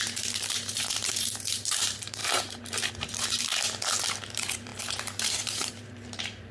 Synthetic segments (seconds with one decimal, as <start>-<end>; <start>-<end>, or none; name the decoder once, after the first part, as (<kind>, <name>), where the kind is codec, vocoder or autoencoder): 0.0-3.5 (vocoder, BigVGAN v2); 4.2-6.5